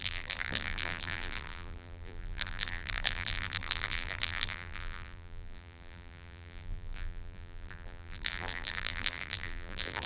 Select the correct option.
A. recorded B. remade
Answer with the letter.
B